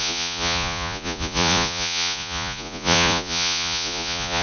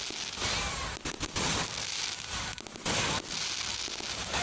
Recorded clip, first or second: second